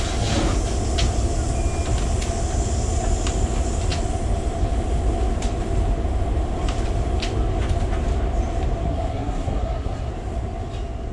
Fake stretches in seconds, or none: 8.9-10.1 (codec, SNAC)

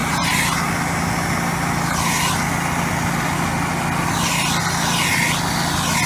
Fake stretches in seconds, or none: 0.0-0.7 (vocoder, BigVGAN v2)

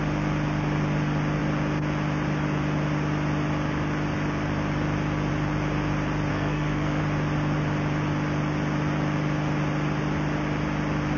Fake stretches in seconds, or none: 6.3-7.0 (codec, SNAC)

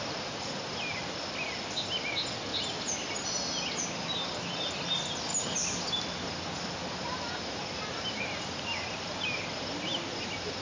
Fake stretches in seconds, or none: 5.3-6.3 (vocoder, BigVGAN v2)

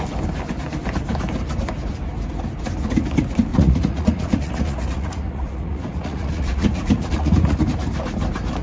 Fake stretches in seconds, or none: 3.5-7.6 (vocoder, Vocos)

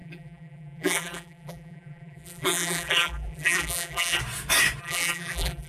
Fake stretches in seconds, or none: 0.0-4.2 (vocoder, BigVGAN v2); 4.8-5.7

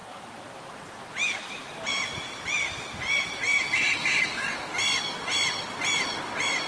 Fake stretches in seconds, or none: none